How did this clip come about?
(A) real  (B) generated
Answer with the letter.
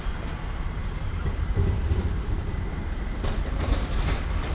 B